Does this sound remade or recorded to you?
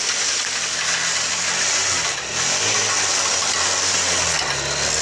recorded